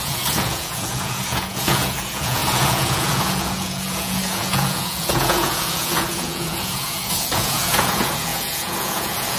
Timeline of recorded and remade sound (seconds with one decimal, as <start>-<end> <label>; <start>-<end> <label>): 0.0-9.4 remade